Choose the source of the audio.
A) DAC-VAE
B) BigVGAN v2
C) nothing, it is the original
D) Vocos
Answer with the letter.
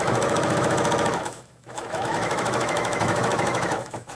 A